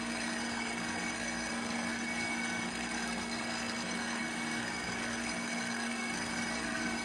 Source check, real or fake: fake